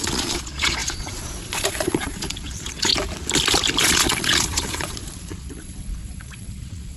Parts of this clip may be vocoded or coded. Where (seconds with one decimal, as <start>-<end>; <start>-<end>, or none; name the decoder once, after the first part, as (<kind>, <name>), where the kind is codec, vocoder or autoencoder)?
0.0-2.9 (vocoder, Vocos); 3.8-7.0